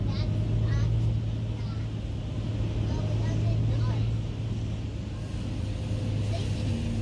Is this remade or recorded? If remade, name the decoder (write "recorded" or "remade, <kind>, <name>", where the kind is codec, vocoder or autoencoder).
recorded